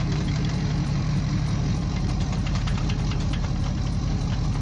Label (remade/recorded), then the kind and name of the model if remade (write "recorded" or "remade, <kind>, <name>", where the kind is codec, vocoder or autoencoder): remade, vocoder, BigVGAN v2